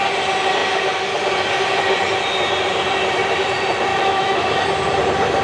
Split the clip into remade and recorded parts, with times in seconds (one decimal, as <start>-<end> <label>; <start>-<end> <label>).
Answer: 0.0-3.9 recorded; 3.9-4.6 remade; 4.6-5.4 recorded